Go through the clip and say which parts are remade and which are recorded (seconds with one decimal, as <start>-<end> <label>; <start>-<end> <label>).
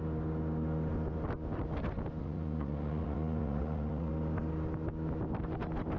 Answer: 0.0-2.2 recorded; 2.2-4.1 remade; 4.1-6.0 recorded